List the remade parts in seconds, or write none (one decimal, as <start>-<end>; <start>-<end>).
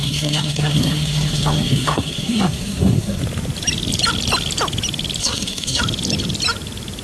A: 0.0-3.2; 5.2-5.8